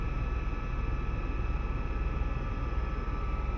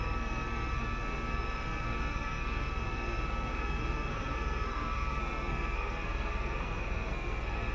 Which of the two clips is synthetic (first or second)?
second